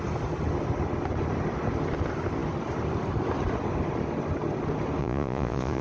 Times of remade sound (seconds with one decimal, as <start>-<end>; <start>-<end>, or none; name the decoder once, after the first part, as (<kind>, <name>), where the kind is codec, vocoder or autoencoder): 5.0-5.8 (vocoder, Vocos)